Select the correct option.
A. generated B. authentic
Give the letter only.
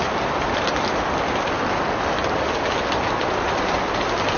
B